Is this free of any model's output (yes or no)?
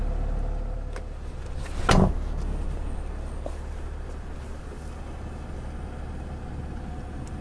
yes